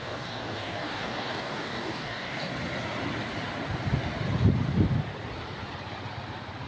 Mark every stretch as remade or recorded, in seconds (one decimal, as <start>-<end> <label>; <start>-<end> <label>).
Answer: 0.0-2.5 remade; 2.5-6.7 recorded